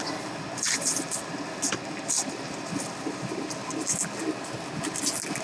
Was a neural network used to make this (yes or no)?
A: no